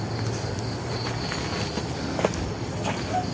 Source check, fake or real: real